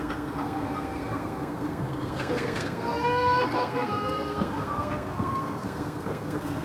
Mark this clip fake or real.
fake